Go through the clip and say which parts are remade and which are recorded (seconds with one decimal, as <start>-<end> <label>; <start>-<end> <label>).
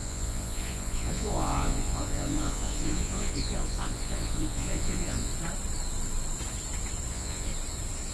0.0-5.3 remade; 5.3-7.1 recorded; 7.1-7.5 remade; 7.5-8.1 recorded